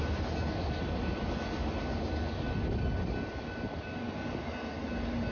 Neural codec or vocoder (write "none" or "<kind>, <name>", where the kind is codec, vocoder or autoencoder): none